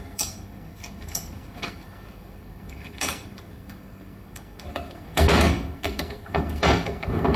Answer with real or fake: fake